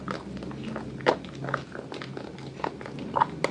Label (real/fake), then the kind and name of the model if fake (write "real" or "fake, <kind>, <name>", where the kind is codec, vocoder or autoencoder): real